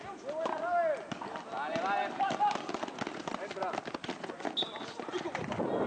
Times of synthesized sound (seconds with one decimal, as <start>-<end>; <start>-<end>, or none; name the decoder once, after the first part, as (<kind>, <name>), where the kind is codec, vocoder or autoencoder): none